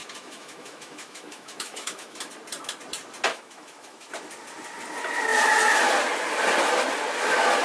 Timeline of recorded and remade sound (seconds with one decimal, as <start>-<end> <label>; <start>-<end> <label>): 0.0-2.3 remade; 2.3-3.3 recorded; 3.3-4.1 remade; 4.1-7.6 recorded